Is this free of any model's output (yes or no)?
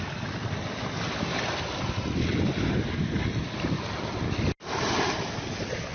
yes